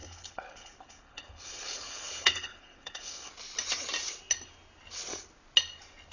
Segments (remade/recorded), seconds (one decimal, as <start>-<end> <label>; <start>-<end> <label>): 0.0-3.3 remade; 3.3-6.1 recorded